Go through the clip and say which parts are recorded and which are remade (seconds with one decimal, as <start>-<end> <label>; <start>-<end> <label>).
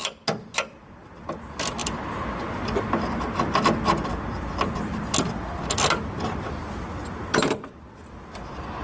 0.0-8.8 recorded